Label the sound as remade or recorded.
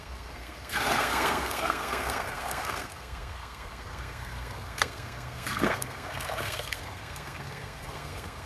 remade